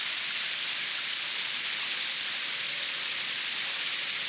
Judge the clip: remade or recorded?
recorded